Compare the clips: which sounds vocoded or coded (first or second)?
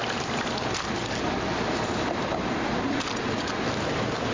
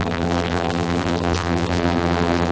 second